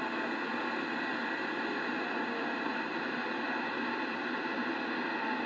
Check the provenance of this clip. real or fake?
real